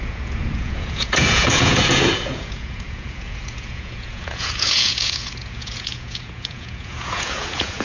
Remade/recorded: remade